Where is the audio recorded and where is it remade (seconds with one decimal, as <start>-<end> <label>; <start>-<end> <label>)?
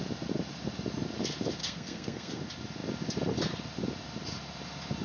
0.0-1.6 recorded; 1.6-2.4 remade; 2.4-5.0 recorded